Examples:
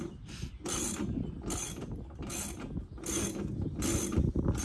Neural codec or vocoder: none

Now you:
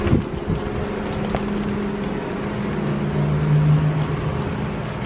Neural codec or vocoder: none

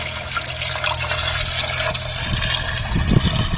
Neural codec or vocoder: none